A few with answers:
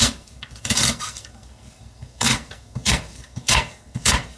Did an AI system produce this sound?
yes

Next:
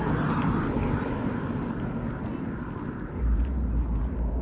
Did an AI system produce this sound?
no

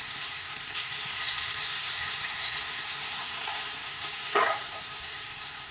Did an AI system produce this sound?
yes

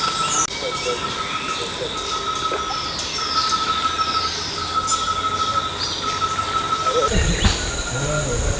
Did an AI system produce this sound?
no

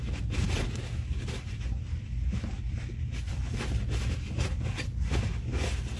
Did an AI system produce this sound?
no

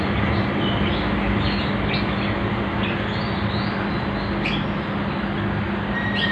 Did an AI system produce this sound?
no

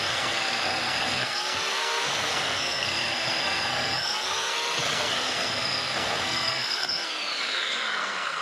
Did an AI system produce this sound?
yes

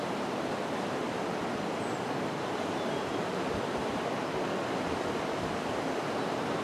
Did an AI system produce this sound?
no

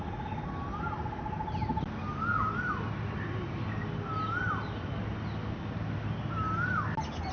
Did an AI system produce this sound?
no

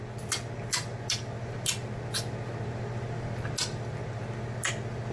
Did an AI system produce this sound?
no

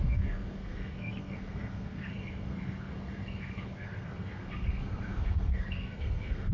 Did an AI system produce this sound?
yes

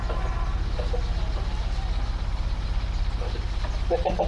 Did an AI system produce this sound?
no